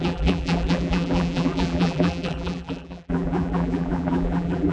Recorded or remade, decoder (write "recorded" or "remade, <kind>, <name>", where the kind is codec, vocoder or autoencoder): remade, vocoder, BigVGAN v2